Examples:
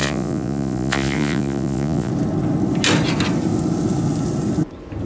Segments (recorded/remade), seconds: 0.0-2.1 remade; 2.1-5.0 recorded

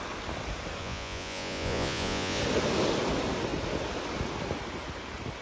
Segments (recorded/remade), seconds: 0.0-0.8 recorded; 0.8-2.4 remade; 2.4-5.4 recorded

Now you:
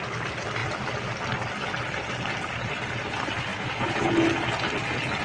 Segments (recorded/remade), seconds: 0.0-3.5 recorded; 3.5-4.1 remade; 4.1-5.2 recorded

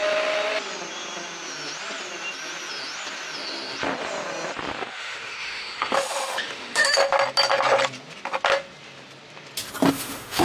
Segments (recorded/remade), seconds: 0.0-4.8 recorded; 4.8-7.0 remade; 7.0-9.9 recorded; 9.9-10.4 remade